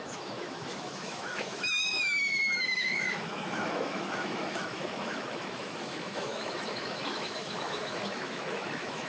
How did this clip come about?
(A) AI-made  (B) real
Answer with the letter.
A